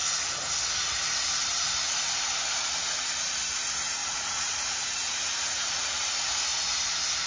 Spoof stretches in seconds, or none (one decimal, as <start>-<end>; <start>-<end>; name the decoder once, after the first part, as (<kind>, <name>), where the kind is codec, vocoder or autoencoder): 4.0-6.8 (vocoder, Vocos)